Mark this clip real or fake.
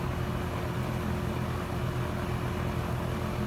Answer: real